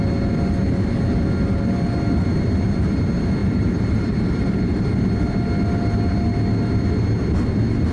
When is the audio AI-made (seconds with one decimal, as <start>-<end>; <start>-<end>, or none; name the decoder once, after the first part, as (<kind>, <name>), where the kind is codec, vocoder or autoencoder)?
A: 3.4-4.8 (vocoder, BigVGAN v2)